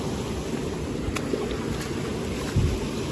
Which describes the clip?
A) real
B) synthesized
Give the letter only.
A